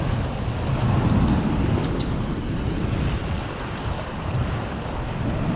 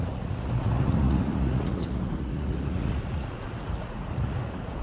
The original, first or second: first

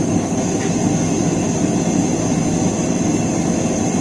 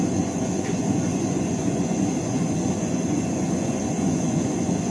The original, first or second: first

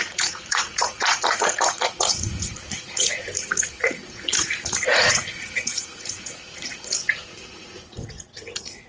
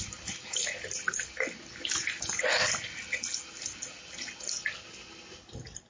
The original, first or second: second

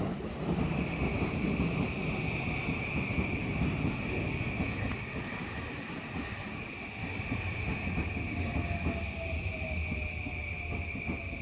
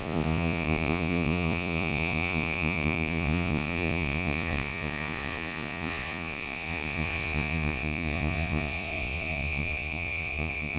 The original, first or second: first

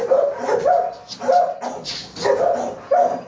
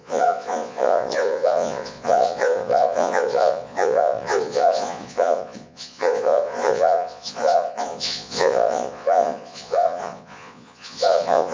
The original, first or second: first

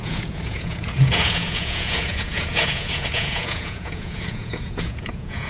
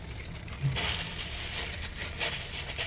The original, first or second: second